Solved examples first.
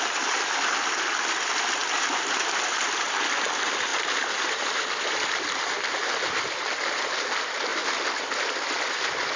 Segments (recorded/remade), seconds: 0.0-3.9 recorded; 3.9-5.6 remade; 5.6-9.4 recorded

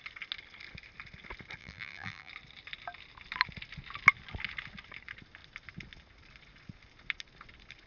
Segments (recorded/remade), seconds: 0.0-1.6 recorded; 1.6-2.3 remade; 2.3-7.9 recorded

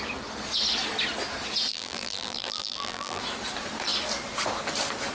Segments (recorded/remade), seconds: 0.0-1.7 recorded; 1.7-3.2 remade; 3.2-5.1 recorded

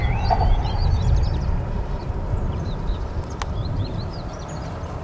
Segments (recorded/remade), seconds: 0.0-1.4 remade; 1.4-2.0 recorded; 2.0-2.9 remade; 2.9-3.6 recorded; 3.6-4.3 remade; 4.3-5.0 recorded

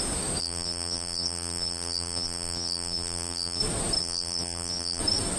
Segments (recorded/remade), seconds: 0.0-0.4 recorded; 0.4-3.6 remade; 3.6-4.0 recorded; 4.0-5.0 remade; 5.0-5.4 recorded